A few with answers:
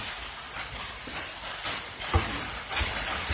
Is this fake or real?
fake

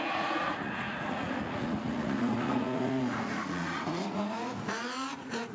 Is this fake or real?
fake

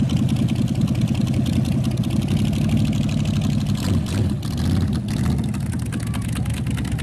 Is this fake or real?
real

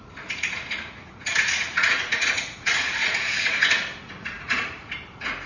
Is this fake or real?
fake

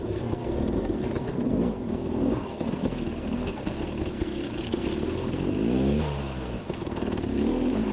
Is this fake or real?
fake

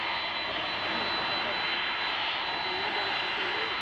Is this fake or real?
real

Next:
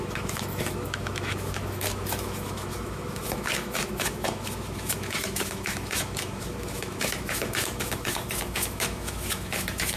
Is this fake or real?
fake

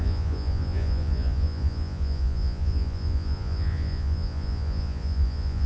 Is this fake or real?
fake